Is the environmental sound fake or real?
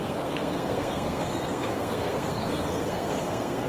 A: fake